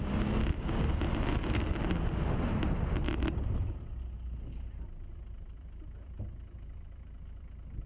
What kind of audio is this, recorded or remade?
recorded